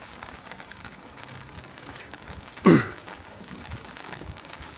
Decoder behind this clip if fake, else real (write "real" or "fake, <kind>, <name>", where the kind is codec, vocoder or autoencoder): fake, codec, DAC